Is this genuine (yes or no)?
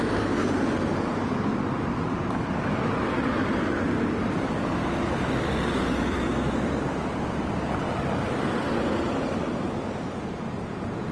yes